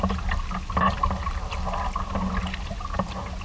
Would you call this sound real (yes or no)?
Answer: yes